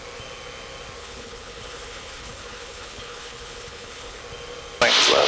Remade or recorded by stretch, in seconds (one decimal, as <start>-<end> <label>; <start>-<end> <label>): 0.0-1.0 recorded; 1.0-4.2 remade; 4.2-5.3 recorded